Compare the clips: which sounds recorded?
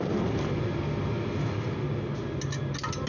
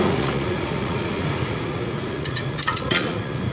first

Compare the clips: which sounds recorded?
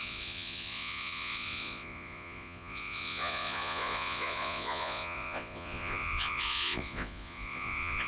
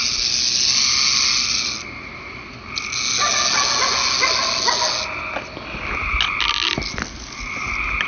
second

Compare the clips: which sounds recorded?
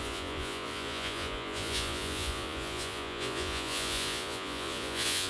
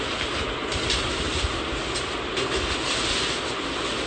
second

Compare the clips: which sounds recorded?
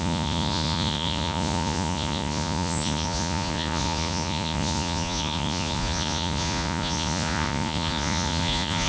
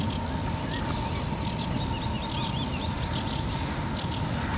second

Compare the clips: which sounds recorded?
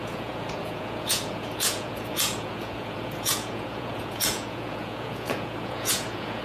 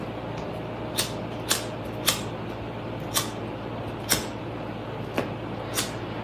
second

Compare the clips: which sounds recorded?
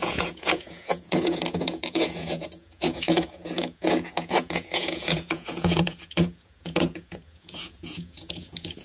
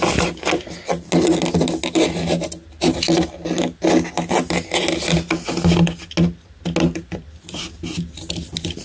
second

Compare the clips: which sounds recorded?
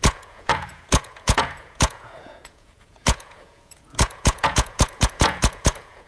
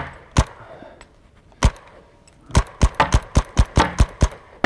second